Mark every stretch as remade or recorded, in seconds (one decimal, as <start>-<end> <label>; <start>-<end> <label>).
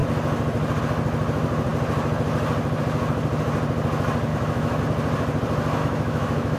0.0-4.3 recorded; 4.3-4.8 remade; 4.8-5.8 recorded; 5.8-6.6 remade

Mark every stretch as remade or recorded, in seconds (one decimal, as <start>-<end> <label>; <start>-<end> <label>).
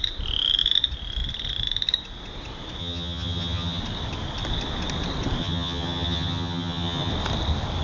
0.0-2.8 recorded; 2.8-3.8 remade; 3.8-5.4 recorded; 5.4-7.1 remade; 7.1-7.8 recorded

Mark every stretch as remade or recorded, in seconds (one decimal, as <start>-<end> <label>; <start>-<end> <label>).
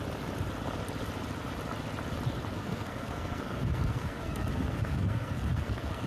0.0-2.5 recorded; 2.5-6.1 remade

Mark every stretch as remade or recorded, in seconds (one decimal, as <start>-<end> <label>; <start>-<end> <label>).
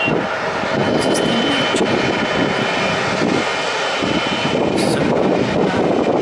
0.0-6.2 recorded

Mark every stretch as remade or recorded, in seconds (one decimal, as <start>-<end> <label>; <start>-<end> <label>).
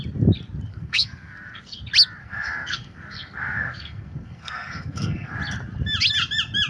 0.0-0.7 recorded; 0.7-1.8 remade; 1.8-2.2 recorded; 2.2-5.4 remade; 5.4-6.7 recorded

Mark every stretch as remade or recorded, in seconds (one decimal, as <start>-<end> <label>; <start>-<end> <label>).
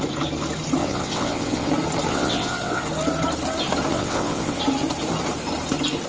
0.0-0.8 recorded; 0.8-1.7 remade; 1.7-2.1 recorded; 2.1-2.8 remade; 2.8-3.9 recorded; 3.9-4.6 remade; 4.6-6.1 recorded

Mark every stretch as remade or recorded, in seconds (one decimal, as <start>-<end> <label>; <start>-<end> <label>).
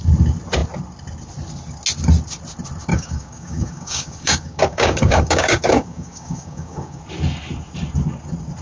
0.0-2.9 recorded; 2.9-7.0 remade; 7.0-8.6 recorded